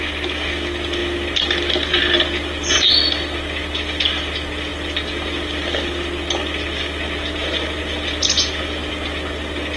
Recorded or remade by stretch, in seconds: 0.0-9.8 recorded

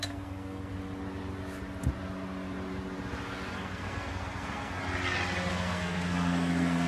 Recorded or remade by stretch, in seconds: 0.0-0.7 remade; 0.7-3.5 recorded; 3.5-4.8 remade; 4.8-5.5 recorded; 5.5-6.9 remade